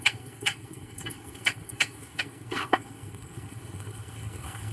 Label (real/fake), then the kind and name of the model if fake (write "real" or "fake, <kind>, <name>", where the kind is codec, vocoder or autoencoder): fake, codec, SNAC